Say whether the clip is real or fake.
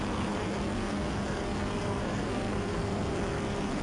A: fake